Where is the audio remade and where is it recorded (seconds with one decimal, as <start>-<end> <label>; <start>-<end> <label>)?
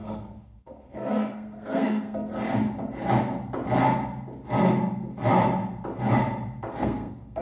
0.0-2.3 remade; 2.3-6.7 recorded; 6.7-7.4 remade